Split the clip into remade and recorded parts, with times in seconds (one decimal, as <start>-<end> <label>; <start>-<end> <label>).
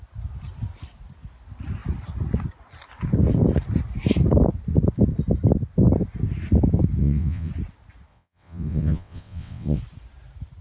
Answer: 0.0-7.0 recorded; 7.0-7.5 remade; 7.5-8.1 recorded; 8.1-9.8 remade; 9.8-10.6 recorded